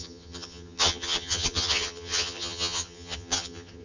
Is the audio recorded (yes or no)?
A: no